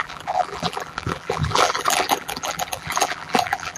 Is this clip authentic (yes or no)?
no